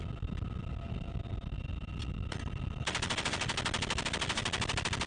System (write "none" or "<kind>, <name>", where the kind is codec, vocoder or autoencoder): none